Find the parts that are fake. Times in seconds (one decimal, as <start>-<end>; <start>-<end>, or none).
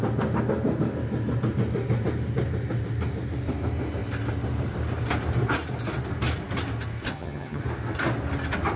7.1-7.6